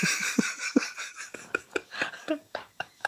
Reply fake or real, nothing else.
fake